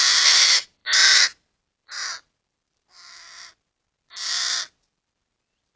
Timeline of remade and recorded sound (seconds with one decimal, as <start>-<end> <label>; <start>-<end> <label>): 0.0-5.8 recorded